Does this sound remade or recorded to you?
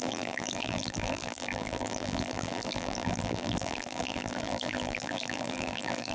remade